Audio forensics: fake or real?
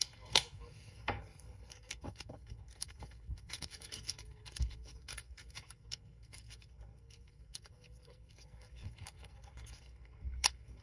fake